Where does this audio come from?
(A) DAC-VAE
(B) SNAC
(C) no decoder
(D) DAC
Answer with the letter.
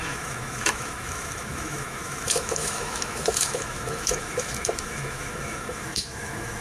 A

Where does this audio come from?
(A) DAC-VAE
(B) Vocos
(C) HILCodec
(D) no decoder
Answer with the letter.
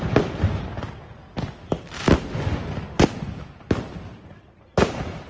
D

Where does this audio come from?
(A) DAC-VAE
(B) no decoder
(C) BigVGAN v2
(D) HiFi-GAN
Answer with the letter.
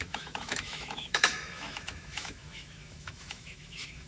A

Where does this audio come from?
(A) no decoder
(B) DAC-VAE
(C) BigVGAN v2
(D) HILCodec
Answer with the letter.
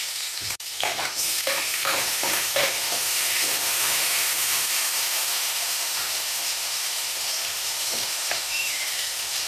B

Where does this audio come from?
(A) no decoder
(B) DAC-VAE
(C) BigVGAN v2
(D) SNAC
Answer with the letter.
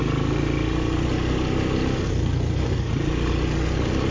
A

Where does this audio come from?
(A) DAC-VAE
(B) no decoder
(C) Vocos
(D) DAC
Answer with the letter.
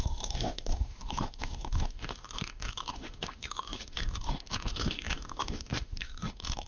A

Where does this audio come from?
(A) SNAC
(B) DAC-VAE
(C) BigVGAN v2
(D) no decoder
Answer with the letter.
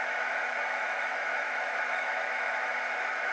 B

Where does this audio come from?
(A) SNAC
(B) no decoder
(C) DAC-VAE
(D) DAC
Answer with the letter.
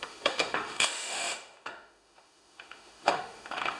C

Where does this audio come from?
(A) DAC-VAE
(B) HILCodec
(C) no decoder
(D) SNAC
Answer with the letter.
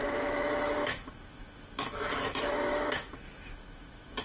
A